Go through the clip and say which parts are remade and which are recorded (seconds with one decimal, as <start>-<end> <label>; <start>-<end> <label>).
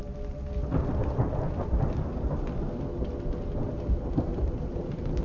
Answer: 0.0-4.3 recorded; 4.3-5.2 remade